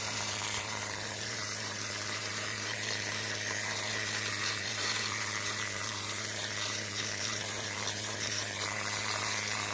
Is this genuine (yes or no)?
no